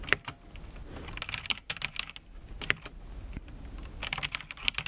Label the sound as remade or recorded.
recorded